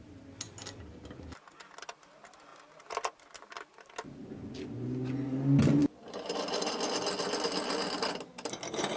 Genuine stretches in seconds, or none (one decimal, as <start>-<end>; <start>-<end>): 0.0-9.0